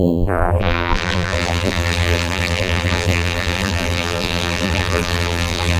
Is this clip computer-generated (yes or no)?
yes